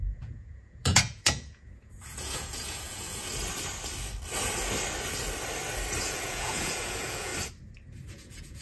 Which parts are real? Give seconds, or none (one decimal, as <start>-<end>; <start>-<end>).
3.3-6.0; 7.3-8.1